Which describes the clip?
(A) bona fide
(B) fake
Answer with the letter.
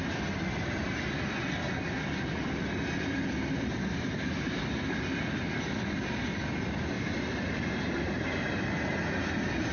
A